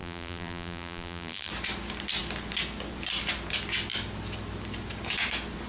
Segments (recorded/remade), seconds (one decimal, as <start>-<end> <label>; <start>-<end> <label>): 0.0-1.5 remade; 1.5-5.7 recorded